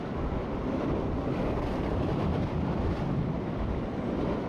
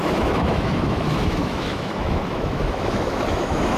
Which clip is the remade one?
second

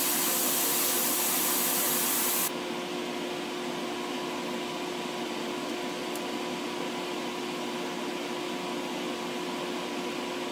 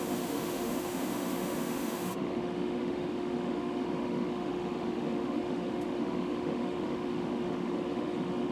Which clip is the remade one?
second